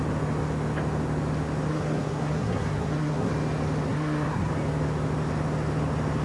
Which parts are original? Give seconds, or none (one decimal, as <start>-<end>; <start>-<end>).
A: 0.0-1.7; 3.3-3.9; 4.5-6.2